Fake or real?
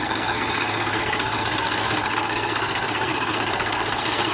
fake